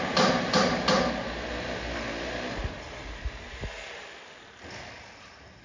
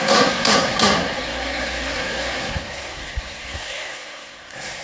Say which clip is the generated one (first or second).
second